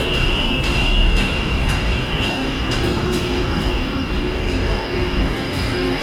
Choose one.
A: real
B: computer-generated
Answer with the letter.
B